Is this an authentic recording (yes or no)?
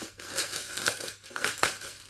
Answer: no